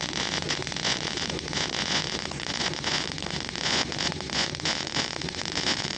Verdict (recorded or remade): remade